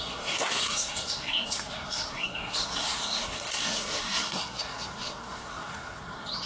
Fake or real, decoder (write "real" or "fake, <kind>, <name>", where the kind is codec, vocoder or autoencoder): fake, codec, SNAC